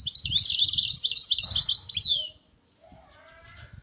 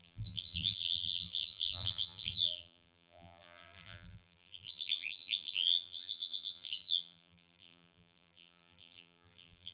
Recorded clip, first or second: first